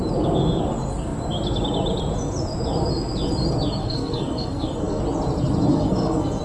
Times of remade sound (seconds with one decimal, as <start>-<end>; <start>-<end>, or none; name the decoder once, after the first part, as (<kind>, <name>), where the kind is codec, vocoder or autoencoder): 3.8-5.0 (codec, SNAC); 5.7-6.4